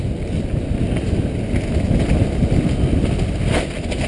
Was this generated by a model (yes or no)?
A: no